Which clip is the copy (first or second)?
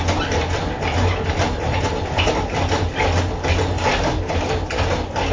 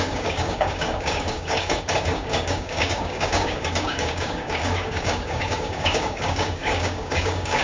second